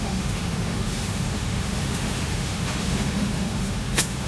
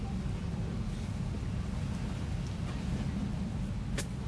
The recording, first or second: second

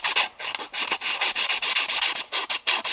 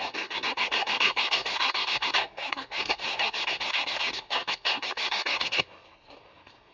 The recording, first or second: first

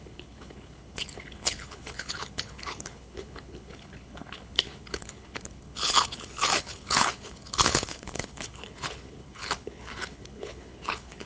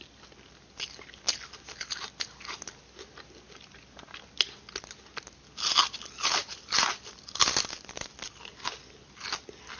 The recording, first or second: second